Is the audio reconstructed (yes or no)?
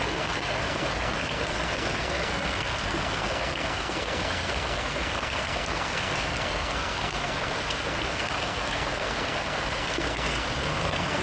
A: yes